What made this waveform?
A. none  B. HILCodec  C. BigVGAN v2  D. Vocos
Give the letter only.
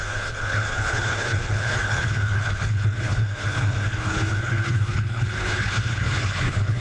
B